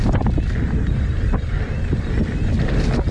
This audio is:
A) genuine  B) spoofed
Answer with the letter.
A